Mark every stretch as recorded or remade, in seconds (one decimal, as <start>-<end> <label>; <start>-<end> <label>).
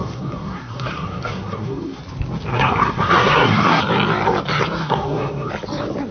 0.0-2.0 remade; 2.0-2.5 recorded; 2.5-3.8 remade; 3.8-4.8 recorded; 4.8-5.5 remade; 5.5-6.1 recorded